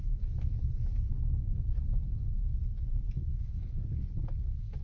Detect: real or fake real